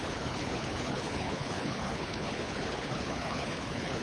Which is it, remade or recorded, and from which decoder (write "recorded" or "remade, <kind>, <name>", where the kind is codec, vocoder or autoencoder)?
remade, codec, HILCodec